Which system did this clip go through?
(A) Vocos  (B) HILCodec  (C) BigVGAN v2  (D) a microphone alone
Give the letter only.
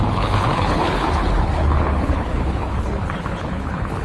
B